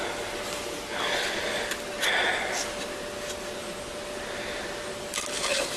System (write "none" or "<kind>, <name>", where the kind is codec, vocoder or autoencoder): none